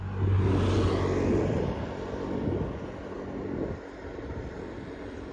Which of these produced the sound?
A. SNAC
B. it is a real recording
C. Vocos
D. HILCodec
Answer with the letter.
B